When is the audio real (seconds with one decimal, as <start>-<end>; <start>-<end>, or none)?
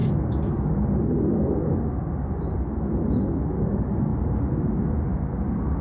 0.0-5.8